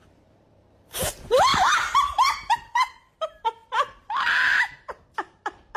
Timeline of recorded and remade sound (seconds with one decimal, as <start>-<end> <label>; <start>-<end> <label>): 0.0-3.6 remade; 3.6-4.9 recorded; 4.9-5.8 remade